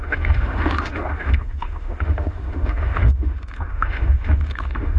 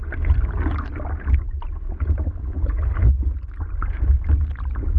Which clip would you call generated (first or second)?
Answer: first